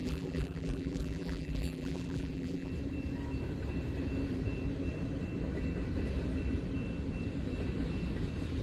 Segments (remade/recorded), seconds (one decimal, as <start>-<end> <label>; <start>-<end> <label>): 0.0-2.7 remade; 2.7-8.6 recorded